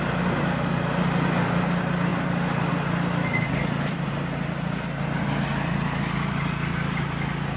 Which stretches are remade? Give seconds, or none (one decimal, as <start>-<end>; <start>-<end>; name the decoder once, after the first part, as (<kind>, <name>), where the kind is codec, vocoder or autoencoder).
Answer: none